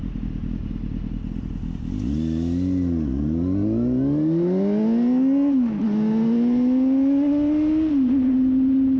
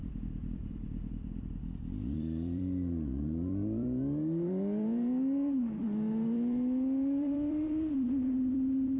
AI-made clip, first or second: second